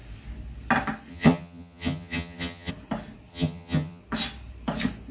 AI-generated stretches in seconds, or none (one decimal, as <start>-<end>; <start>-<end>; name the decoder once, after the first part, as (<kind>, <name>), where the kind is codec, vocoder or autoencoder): 1.1-2.7 (vocoder, HiFi-GAN); 3.3-4.0